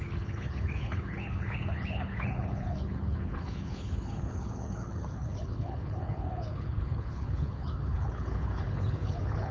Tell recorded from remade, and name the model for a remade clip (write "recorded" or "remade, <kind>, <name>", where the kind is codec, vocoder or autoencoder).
remade, codec, HILCodec